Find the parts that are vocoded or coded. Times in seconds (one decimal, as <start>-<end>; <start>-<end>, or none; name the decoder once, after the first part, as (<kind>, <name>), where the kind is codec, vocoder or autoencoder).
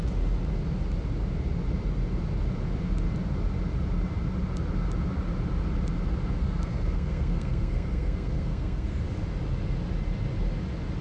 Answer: 6.4-9.0 (codec, SNAC)